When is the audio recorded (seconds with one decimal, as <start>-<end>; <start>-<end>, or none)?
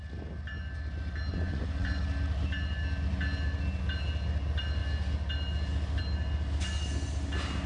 0.0-1.3; 2.0-7.7